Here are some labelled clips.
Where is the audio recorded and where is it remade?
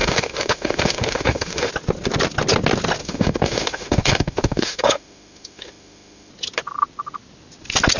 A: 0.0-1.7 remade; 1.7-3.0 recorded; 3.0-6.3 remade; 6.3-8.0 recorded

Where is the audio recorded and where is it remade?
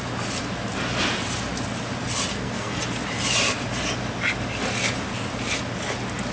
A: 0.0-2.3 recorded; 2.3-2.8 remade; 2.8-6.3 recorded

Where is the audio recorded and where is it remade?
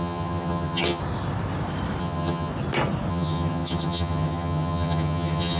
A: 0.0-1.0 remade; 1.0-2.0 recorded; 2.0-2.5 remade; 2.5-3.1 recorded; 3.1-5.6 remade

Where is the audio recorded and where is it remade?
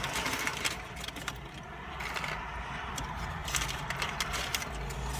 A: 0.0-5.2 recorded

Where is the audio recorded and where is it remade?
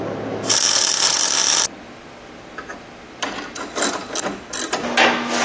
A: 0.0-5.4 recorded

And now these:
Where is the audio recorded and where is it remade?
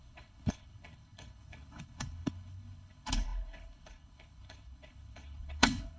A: 0.0-6.0 remade